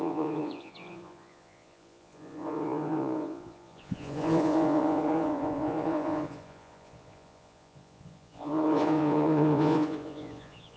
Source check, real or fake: fake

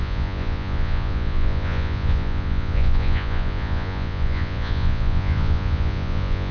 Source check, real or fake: fake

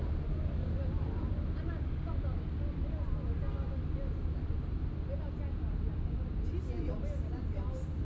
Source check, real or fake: real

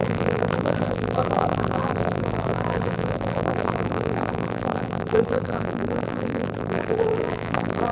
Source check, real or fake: fake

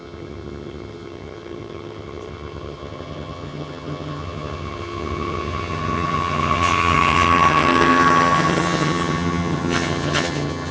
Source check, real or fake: fake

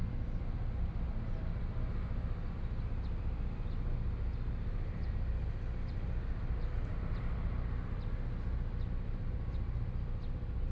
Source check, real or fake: real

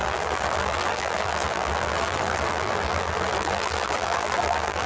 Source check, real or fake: fake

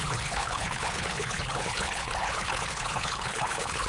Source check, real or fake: fake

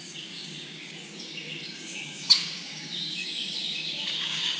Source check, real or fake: fake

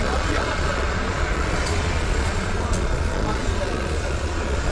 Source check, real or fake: fake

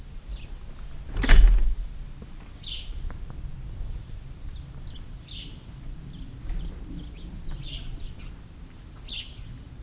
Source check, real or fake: real